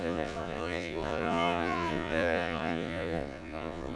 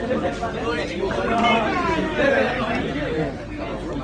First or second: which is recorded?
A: second